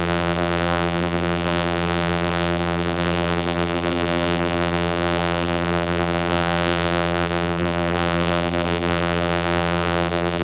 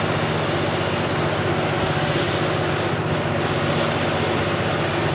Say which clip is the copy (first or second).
first